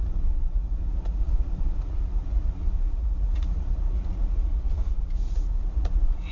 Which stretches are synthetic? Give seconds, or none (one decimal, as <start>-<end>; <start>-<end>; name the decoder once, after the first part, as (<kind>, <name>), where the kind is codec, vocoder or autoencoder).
0.0-6.3 (vocoder, Vocos)